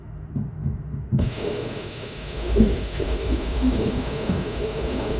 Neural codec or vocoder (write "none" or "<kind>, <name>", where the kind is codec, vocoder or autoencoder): autoencoder, DAC-VAE